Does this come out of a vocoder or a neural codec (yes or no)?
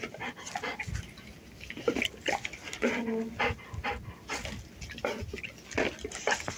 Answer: no